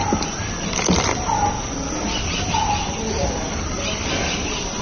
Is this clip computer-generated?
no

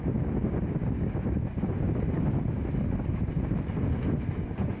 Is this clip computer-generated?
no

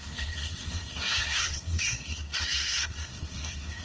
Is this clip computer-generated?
yes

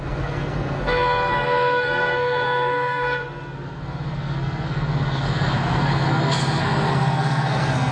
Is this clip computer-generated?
yes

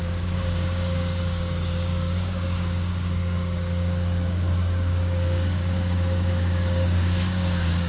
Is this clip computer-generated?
yes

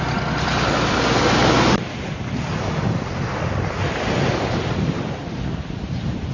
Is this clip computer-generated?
no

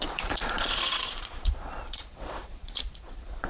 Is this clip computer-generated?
yes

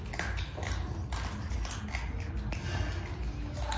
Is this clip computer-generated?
no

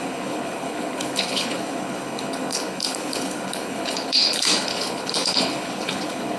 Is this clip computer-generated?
yes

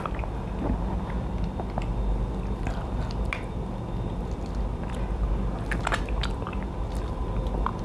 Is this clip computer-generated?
no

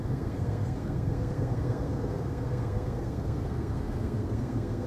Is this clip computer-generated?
yes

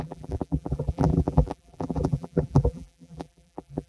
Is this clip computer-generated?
yes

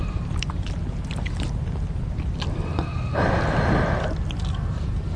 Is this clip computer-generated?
no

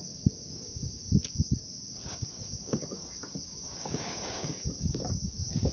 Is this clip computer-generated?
yes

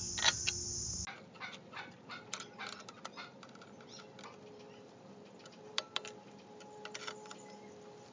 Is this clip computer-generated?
no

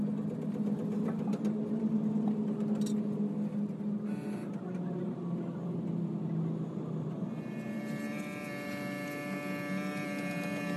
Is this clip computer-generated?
no